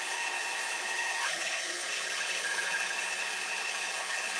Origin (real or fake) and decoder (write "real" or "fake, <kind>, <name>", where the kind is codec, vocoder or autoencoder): fake, codec, HILCodec